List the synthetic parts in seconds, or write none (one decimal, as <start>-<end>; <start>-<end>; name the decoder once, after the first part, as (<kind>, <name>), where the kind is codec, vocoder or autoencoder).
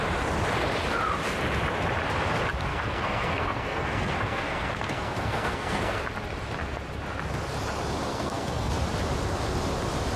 2.7-6.0 (codec, SNAC); 8.1-8.7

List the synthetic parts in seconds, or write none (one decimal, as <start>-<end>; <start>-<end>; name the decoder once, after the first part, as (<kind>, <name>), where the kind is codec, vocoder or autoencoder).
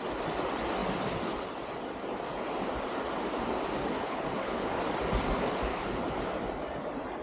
3.8-4.8 (codec, HILCodec); 5.7-6.2